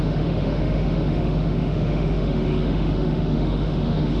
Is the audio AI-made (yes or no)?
yes